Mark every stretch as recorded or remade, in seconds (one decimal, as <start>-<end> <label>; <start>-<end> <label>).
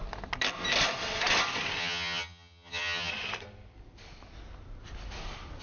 0.0-1.8 recorded; 1.8-3.1 remade; 3.1-5.6 recorded